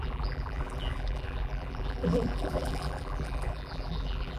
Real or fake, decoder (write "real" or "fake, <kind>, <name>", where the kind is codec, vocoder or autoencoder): fake, vocoder, BigVGAN v2